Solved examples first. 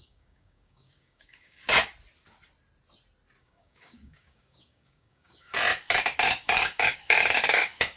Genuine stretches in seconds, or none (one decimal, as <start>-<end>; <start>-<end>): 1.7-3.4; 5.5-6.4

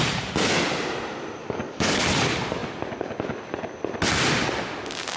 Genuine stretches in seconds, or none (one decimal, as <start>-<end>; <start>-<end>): 0.0-1.4; 2.0-5.2

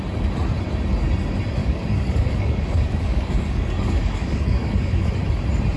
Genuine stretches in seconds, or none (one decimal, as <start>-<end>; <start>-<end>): 0.0-1.6; 5.1-5.8

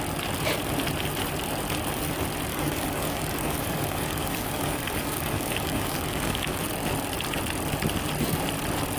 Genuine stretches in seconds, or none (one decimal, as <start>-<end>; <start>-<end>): 0.0-2.5; 6.6-9.0